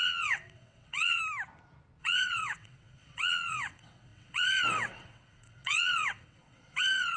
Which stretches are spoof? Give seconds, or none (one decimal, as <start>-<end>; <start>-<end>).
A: 0.0-1.2; 2.0-7.2